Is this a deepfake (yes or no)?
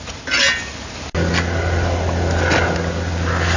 no